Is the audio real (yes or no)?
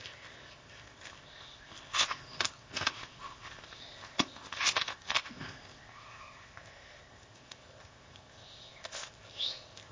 no